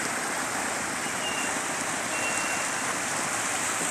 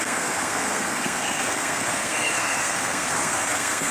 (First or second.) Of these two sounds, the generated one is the second